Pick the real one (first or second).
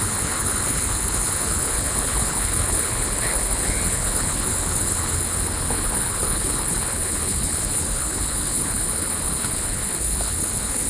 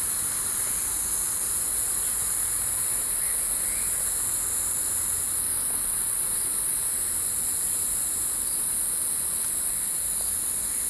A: second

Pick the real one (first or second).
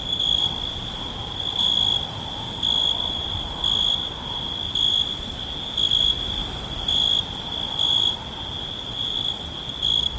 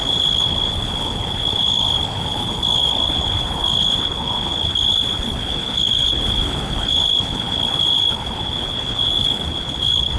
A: first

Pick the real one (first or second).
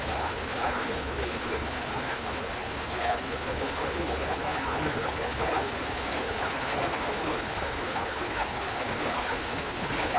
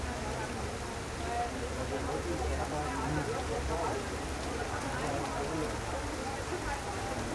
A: second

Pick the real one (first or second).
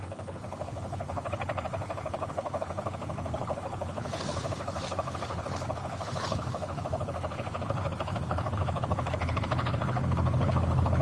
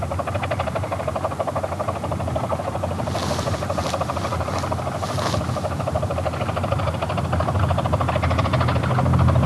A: second